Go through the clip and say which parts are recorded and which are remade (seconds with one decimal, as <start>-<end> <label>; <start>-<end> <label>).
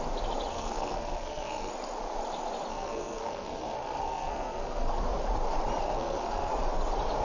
0.0-0.5 recorded; 0.5-1.7 remade; 1.7-2.7 recorded; 2.7-5.0 remade; 5.0-5.8 recorded; 5.8-6.5 remade; 6.5-7.2 recorded